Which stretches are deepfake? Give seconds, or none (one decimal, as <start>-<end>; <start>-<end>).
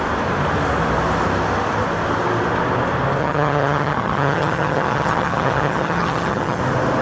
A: 3.2-6.6